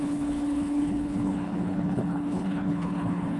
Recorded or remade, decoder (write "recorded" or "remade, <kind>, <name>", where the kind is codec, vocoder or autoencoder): remade, codec, HILCodec